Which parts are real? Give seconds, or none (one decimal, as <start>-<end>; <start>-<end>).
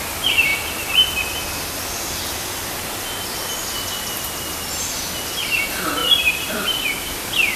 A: 0.0-6.0; 6.5-7.6